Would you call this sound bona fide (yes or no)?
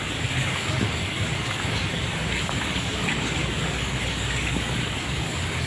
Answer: no